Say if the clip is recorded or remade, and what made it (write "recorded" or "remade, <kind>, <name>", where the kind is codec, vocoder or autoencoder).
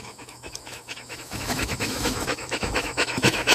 remade, autoencoder, DAC-VAE